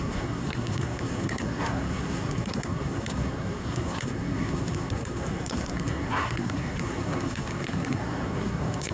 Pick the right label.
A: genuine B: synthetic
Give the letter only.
B